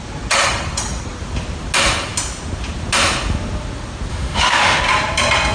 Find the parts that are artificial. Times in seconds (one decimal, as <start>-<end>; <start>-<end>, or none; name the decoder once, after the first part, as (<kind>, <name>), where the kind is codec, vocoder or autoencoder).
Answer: 4.1-4.8 (autoencoder, DAC-VAE)